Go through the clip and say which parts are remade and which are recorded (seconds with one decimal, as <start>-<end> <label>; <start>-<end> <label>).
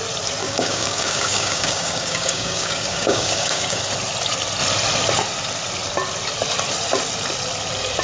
0.0-0.4 recorded; 0.4-3.8 remade; 3.8-8.0 recorded